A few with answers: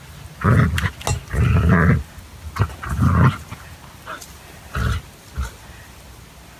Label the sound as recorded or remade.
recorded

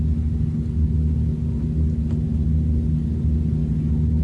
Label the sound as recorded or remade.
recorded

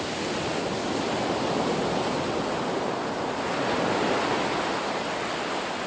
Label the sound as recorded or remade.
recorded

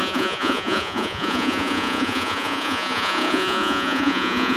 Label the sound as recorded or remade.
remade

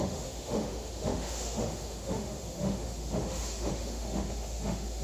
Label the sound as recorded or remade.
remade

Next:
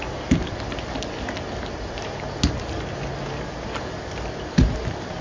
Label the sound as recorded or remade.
recorded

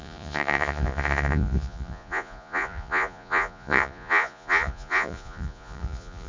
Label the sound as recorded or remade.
remade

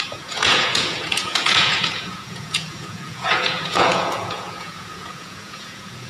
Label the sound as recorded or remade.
remade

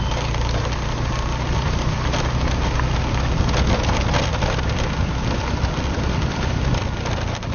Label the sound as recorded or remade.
recorded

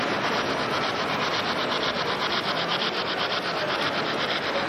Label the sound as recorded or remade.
recorded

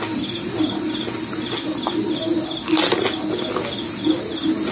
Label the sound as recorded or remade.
recorded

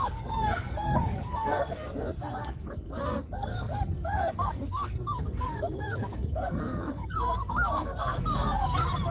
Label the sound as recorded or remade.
remade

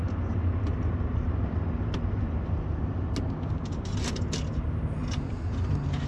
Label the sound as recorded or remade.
recorded